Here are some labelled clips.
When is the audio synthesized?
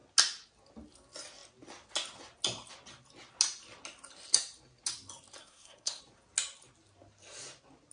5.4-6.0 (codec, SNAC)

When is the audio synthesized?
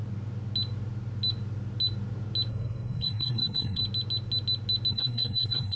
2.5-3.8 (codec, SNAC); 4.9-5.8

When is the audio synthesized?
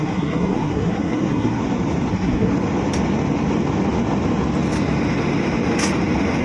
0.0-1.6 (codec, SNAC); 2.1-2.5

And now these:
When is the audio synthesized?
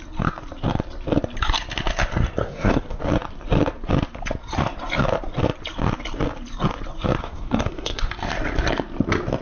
2.4-3.0 (codec, SNAC); 7.2-8.1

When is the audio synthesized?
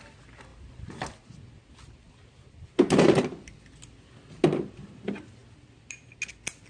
none